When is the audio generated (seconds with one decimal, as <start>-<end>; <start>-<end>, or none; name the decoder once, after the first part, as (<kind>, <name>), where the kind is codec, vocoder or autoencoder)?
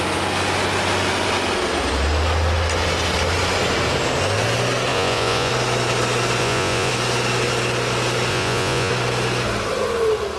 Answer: 4.9-5.5 (vocoder, Vocos); 6.4-6.9; 8.3-8.9